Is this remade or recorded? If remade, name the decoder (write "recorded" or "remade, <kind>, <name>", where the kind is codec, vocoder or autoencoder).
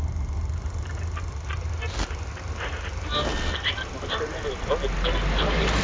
recorded